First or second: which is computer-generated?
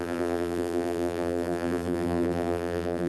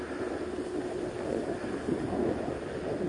first